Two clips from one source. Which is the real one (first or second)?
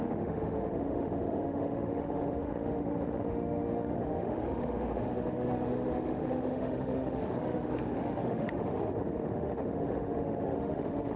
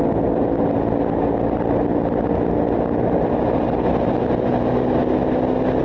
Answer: second